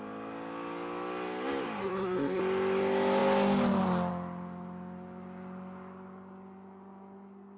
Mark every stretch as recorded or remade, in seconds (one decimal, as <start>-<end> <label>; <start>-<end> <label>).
0.0-1.8 recorded; 1.8-2.4 remade; 2.4-7.6 recorded